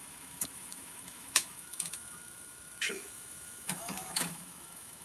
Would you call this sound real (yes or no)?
no